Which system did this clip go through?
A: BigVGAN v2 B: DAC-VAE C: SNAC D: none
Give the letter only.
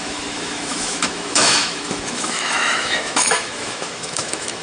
B